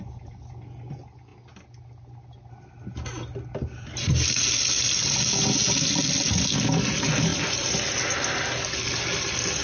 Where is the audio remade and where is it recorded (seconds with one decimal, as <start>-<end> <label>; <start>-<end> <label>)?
0.0-7.3 recorded; 7.3-7.9 remade; 7.9-9.6 recorded